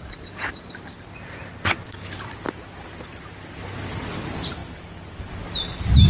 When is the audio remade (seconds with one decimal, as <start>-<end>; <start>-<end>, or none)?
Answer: 4.6-5.4